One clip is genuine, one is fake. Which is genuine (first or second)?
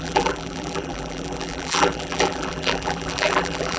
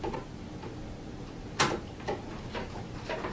second